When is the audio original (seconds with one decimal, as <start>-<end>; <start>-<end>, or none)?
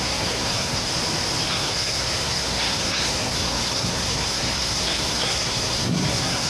0.9-1.5